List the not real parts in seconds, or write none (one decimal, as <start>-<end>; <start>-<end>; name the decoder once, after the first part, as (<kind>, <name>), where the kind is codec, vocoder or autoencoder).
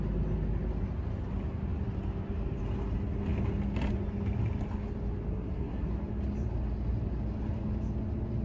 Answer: 5.3-5.9 (codec, SNAC)